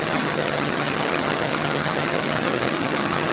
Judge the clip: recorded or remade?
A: remade